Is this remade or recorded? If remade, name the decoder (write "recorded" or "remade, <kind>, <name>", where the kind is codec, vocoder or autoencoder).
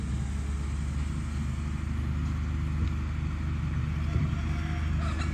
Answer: recorded